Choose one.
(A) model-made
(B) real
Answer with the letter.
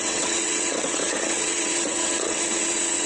A